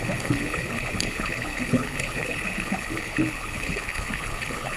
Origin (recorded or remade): remade